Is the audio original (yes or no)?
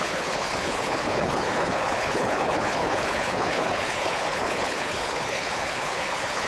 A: no